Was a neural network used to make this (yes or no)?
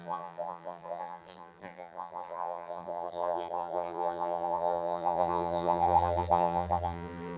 yes